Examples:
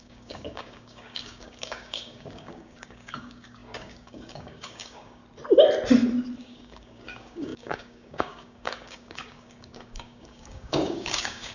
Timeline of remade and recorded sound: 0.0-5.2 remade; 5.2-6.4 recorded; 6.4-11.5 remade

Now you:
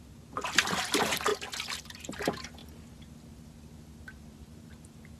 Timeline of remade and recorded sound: 0.0-2.6 remade; 2.6-4.2 recorded; 4.2-5.2 remade

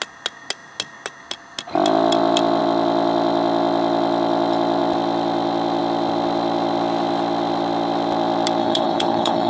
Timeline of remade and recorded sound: 0.0-8.6 recorded; 8.6-9.5 remade

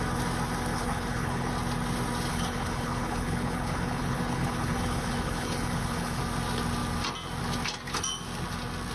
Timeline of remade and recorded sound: 0.0-0.7 recorded; 0.7-1.5 remade; 1.5-2.3 recorded; 2.3-6.2 remade; 6.2-8.9 recorded

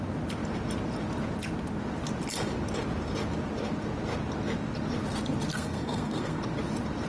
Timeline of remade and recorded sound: 0.0-5.5 recorded; 5.5-6.4 remade; 6.4-7.1 recorded